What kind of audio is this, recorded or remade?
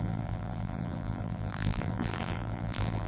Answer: remade